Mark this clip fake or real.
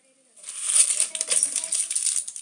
real